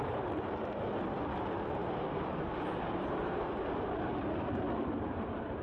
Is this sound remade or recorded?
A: remade